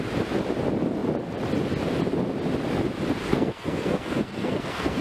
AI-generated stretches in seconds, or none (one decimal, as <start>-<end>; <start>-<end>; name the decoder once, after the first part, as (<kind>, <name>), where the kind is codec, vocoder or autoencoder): 3.3-5.0 (codec, SNAC)